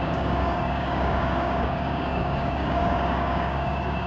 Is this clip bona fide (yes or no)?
no